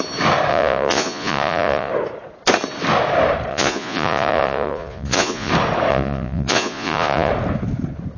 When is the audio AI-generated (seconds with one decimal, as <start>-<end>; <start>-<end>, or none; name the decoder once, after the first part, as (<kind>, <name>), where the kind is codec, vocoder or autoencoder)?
0.5-1.9 (vocoder, Vocos); 3.5-5.5; 5.9-7.3